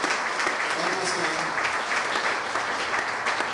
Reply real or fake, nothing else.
real